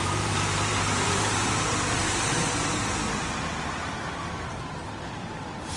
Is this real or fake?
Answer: fake